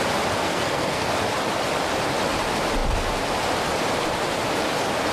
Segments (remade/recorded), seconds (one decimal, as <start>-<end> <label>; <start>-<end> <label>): 0.0-0.4 recorded; 0.4-1.1 remade; 1.1-5.1 recorded